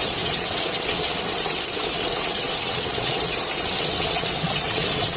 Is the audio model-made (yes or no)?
yes